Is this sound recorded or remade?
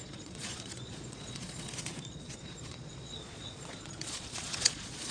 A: remade